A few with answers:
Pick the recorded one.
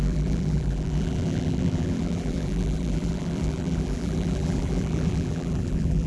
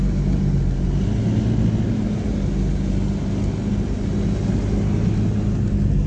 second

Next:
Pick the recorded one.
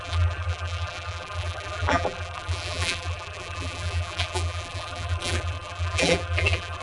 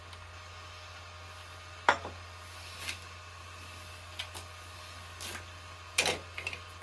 second